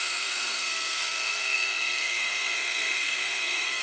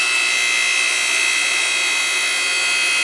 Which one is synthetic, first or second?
first